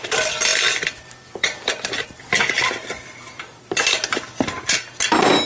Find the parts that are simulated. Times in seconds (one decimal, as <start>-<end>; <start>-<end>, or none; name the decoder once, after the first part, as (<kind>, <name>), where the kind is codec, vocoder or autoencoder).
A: 0.5-3.8 (vocoder, BigVGAN v2)

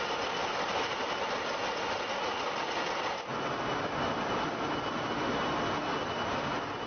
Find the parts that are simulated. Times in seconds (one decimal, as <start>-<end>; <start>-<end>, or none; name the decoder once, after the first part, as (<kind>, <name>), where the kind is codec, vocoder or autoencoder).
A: none

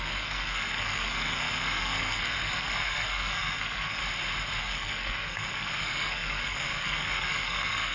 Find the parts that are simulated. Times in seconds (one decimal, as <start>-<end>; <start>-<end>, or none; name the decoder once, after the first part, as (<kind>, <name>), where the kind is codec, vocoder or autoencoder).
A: 0.0-4.0 (codec, SNAC); 4.6-7.9

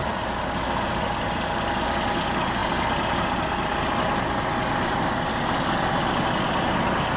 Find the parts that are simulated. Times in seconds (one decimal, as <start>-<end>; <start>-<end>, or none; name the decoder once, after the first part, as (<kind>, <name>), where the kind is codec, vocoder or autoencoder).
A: none

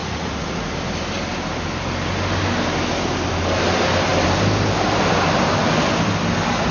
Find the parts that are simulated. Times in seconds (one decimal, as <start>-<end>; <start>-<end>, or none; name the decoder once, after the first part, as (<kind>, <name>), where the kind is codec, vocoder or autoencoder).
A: 0.0-0.7 (vocoder, Vocos)

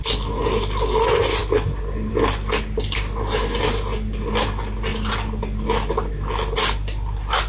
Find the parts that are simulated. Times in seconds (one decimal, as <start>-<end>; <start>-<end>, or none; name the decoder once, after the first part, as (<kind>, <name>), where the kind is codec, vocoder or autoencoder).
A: none

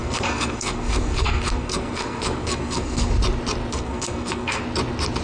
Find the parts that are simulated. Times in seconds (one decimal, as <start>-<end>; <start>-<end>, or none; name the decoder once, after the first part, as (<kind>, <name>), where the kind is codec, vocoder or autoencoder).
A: 0.0-3.1 (codec, SNAC); 3.7-4.6